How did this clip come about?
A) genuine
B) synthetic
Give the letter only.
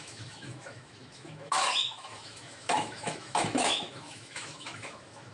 B